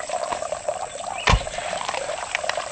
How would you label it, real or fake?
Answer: fake